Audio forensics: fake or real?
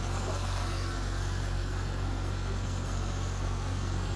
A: fake